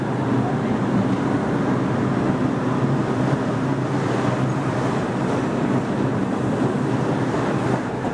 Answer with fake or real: real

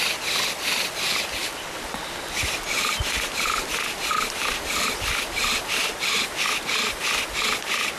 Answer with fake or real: real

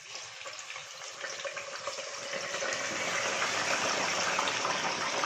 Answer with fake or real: real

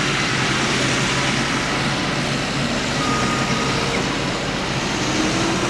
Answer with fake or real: real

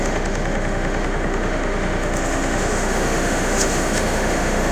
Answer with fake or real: fake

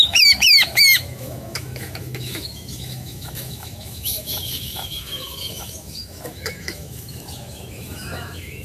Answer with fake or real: fake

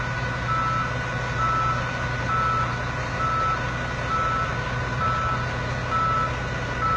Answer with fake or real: real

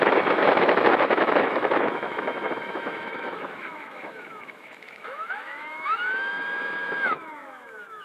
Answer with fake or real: fake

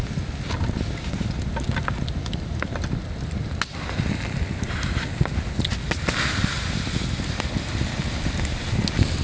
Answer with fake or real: real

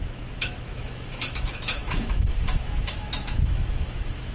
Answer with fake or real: fake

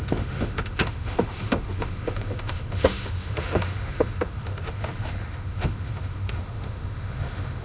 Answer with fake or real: fake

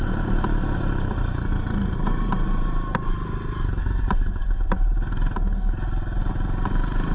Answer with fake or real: real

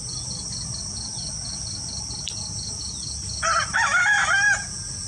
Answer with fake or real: real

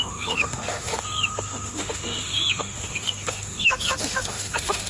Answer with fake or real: fake